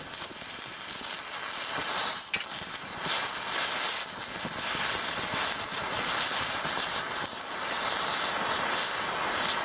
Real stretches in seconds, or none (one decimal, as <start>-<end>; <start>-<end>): 0.0-9.6